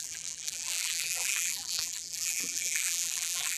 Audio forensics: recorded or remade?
remade